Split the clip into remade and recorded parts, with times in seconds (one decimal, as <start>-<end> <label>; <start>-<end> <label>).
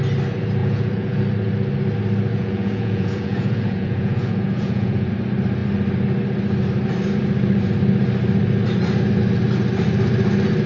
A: 0.0-0.6 recorded; 0.6-1.2 remade; 1.2-2.3 recorded; 2.3-5.1 remade; 5.1-10.7 recorded